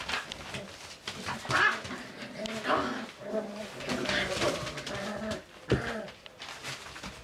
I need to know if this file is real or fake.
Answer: real